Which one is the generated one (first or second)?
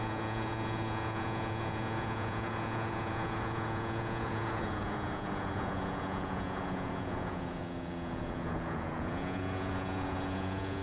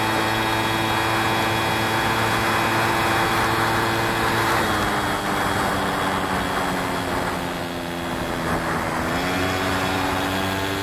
first